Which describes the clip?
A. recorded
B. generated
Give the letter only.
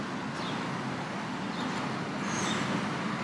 A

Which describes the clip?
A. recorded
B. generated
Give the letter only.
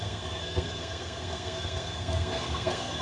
B